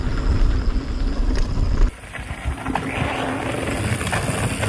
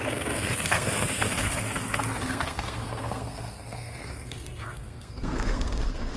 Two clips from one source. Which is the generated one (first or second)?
second